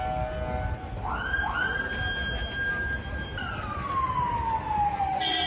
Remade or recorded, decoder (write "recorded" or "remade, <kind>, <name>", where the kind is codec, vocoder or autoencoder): recorded